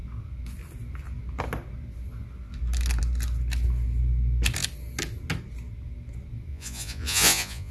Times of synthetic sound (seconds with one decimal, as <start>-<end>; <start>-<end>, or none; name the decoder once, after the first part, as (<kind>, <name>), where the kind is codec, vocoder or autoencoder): 6.5-7.7 (vocoder, Vocos)